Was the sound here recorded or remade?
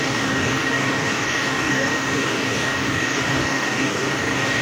remade